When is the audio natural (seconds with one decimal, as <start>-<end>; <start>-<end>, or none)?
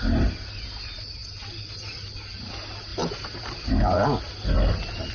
0.0-1.2; 1.8-2.9; 3.7-5.1